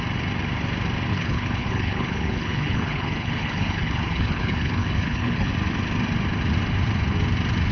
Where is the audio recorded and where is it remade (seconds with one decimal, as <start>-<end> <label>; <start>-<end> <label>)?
0.0-1.1 recorded; 1.1-5.5 remade; 5.5-7.7 recorded